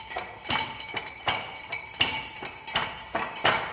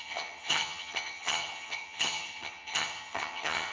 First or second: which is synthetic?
second